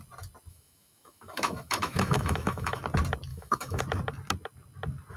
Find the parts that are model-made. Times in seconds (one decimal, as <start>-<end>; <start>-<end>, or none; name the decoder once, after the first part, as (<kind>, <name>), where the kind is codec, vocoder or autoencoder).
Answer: 0.5-2.8 (autoencoder, DAC-VAE); 3.3-3.8